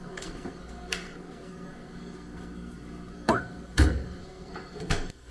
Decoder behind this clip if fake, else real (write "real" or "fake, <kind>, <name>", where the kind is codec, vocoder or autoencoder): fake, codec, SNAC